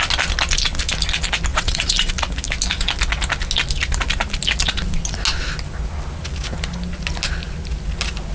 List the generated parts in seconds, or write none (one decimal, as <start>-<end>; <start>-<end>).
1.5-2.1